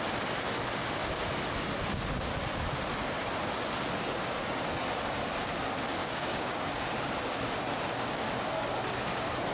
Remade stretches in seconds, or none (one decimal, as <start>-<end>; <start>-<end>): 6.0-6.7